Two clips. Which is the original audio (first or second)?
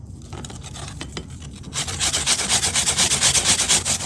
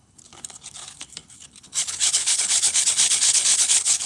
first